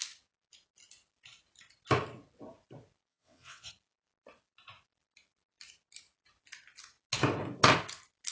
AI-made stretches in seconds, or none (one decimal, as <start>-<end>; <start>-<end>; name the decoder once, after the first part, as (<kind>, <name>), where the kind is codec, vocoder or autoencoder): 3.1-3.7 (vocoder, WaveNeXt)